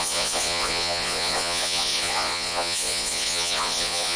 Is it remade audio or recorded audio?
remade